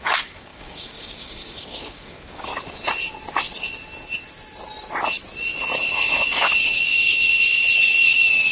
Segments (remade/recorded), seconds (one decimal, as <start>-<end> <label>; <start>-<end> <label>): 0.0-2.5 remade; 2.5-5.8 recorded; 5.8-8.5 remade